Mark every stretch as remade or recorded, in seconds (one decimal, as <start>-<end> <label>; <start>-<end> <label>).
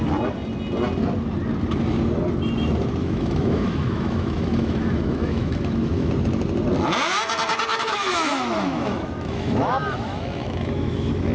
0.0-3.0 recorded; 3.0-6.1 remade; 6.1-7.7 recorded; 7.7-11.3 remade